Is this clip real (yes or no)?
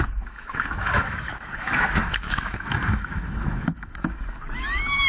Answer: no